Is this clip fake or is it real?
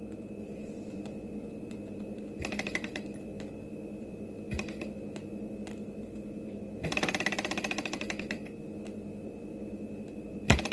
fake